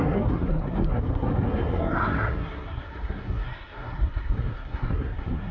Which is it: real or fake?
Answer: fake